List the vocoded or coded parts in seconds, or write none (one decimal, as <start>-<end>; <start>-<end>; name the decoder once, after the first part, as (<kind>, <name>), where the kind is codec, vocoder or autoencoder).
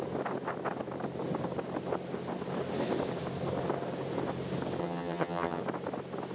4.8-5.6 (vocoder, HiFi-GAN)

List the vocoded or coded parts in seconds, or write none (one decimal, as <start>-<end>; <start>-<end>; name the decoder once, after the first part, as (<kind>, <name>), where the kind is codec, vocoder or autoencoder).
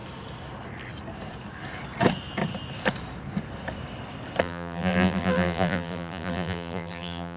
4.4-7.4 (vocoder, BigVGAN v2)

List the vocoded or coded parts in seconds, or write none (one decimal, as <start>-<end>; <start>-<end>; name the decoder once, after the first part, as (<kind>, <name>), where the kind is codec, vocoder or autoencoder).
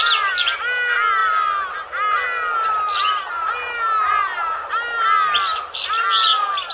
none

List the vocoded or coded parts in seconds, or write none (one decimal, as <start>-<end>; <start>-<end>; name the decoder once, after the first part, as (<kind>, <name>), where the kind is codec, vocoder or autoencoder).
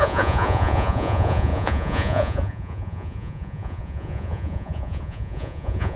0.0-6.0 (vocoder, Vocos)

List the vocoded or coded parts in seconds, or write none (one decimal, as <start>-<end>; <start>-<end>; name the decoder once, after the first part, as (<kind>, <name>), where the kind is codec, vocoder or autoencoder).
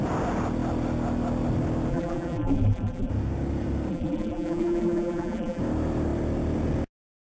1.9-3.1 (vocoder, BigVGAN v2); 3.9-5.6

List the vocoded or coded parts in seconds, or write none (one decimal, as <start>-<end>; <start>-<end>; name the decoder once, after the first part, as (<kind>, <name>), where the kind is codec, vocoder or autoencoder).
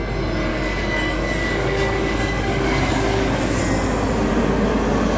0.5-3.6 (codec, DAC)